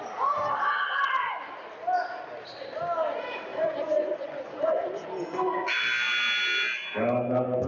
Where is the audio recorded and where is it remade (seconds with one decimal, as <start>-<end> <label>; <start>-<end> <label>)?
0.0-3.5 recorded; 3.5-4.9 remade; 4.9-7.7 recorded